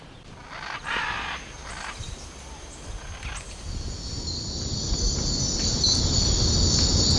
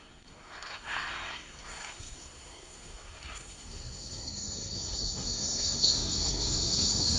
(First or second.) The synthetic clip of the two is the second